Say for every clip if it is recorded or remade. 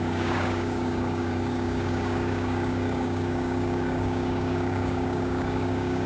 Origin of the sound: remade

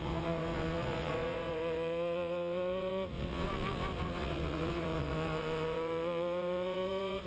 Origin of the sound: remade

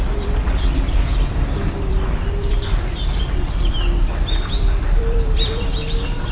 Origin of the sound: remade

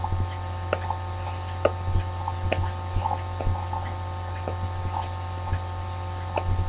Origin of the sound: recorded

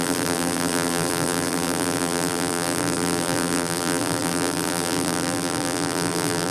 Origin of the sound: remade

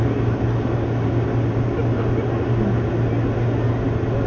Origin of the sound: recorded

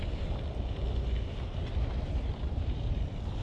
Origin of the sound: recorded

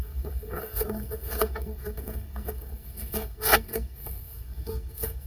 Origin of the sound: remade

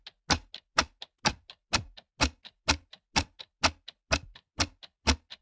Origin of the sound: recorded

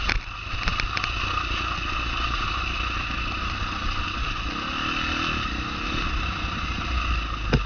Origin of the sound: recorded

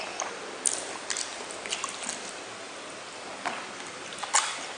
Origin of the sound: recorded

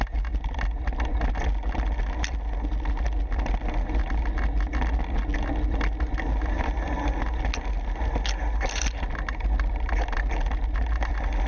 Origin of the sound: recorded